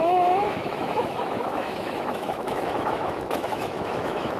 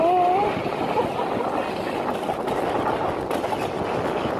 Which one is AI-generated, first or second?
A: first